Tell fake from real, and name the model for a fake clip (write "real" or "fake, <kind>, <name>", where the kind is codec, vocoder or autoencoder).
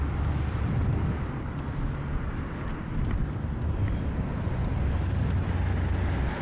real